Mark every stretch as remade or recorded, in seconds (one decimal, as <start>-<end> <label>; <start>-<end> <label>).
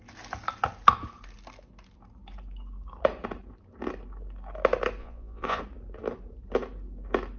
0.0-5.0 recorded; 5.0-5.6 remade; 5.6-7.4 recorded